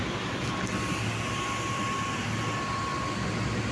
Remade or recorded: recorded